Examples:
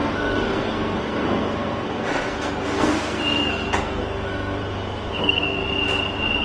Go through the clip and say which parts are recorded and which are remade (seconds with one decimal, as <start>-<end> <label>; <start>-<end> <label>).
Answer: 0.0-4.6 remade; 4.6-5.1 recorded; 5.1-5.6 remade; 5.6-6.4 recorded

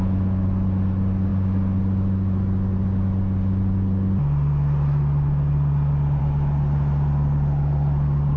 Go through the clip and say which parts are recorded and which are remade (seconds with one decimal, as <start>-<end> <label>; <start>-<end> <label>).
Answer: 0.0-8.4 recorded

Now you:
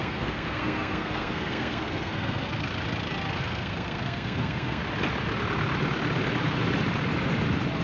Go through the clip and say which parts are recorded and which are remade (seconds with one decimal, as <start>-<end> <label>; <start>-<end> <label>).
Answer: 0.0-2.7 remade; 2.7-3.3 recorded; 3.3-4.8 remade; 4.8-7.8 recorded